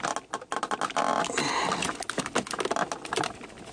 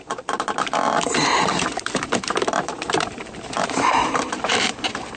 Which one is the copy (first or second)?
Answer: second